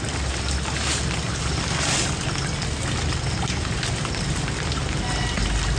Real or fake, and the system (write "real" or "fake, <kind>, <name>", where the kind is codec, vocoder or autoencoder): real